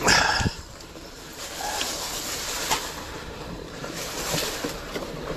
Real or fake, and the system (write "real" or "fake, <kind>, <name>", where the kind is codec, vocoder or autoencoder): fake, vocoder, BigVGAN v2